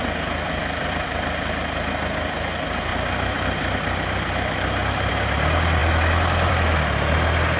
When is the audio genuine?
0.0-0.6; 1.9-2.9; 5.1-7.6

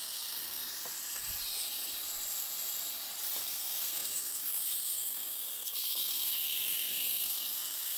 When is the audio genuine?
0.6-3.4

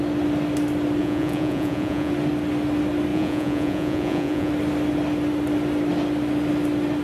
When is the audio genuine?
0.0-1.0; 2.1-3.1; 4.5-7.0